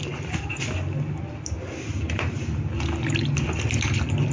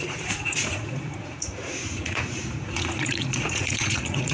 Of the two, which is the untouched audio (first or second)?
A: first